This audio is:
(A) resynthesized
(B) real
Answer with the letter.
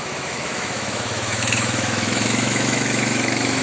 A